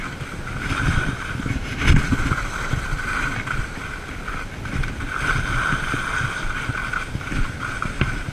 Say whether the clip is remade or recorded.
recorded